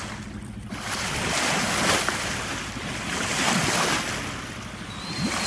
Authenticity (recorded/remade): recorded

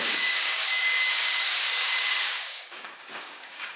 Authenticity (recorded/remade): remade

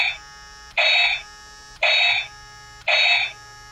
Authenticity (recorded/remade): recorded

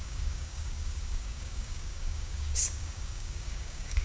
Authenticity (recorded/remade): remade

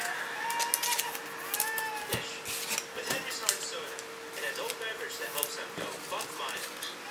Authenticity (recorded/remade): recorded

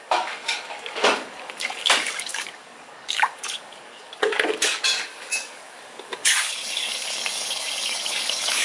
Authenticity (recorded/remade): remade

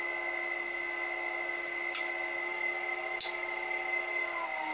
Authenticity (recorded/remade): recorded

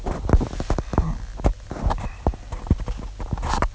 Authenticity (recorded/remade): recorded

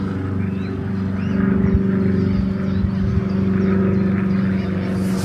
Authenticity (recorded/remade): recorded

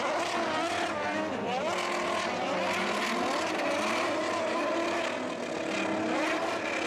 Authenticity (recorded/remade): recorded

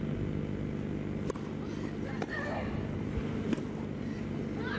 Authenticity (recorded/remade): recorded